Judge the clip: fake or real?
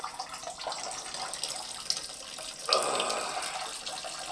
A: real